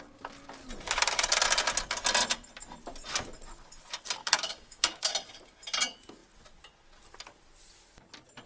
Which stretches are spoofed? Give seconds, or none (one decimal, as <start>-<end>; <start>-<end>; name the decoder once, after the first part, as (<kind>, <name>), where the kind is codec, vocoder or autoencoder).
4.2-5.1 (codec, DAC)

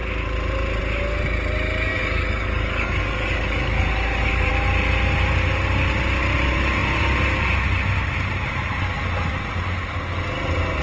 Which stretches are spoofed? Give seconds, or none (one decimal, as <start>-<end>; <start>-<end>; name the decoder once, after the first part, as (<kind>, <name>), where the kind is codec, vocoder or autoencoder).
1.9-4.5 (codec, DAC)